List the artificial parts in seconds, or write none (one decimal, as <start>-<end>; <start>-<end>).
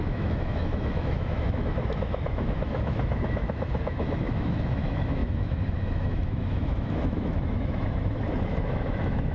0.0-9.3